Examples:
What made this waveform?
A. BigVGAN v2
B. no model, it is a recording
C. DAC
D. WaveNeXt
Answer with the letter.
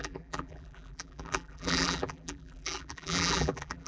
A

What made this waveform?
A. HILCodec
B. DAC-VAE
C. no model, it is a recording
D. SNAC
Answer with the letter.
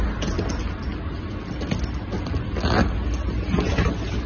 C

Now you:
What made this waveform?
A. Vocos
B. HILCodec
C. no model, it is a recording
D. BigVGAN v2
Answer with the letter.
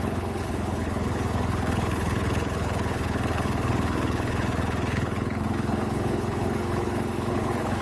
B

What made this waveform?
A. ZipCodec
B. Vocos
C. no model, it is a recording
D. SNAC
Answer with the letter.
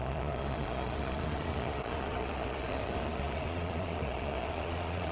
B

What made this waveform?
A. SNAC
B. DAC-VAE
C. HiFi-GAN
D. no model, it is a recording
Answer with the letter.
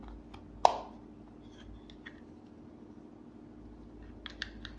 D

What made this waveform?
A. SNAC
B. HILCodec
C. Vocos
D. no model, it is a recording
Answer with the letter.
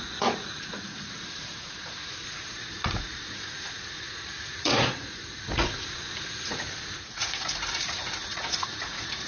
C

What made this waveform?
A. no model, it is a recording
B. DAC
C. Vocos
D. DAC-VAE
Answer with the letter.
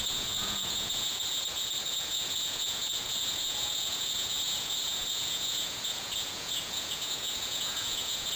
C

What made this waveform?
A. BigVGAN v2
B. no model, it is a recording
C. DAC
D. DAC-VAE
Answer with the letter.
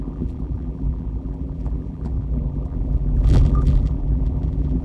A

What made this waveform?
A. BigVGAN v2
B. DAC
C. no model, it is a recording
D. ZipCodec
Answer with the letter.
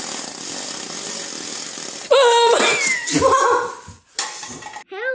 C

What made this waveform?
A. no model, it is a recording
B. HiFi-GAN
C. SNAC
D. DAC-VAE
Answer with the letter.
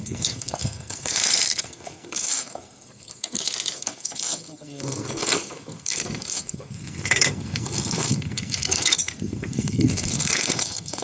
C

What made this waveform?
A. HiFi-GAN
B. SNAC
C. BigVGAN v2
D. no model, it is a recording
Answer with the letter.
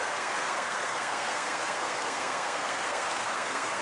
B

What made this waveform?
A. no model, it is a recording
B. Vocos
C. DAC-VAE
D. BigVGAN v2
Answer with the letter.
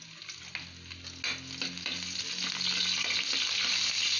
A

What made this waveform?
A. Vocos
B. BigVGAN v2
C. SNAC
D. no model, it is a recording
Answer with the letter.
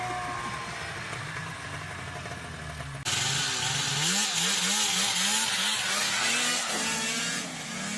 D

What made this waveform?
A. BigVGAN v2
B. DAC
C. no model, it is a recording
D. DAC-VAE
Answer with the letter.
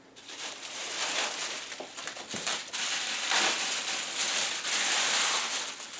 C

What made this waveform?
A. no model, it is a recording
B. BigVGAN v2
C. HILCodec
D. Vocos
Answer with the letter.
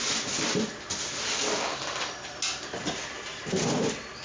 A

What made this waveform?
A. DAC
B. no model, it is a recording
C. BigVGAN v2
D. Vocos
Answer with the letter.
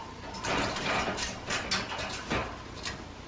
B